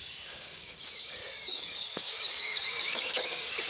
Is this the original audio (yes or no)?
no